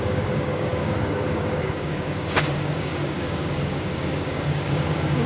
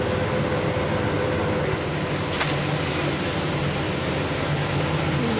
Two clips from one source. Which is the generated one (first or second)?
first